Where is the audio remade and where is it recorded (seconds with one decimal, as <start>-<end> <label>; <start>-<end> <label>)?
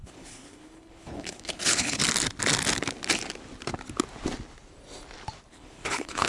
0.0-2.0 remade; 2.0-5.5 recorded; 5.5-6.3 remade